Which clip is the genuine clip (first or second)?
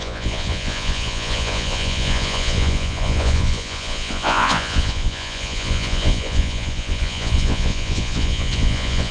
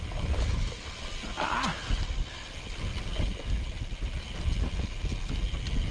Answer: second